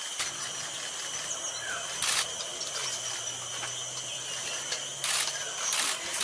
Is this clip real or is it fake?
real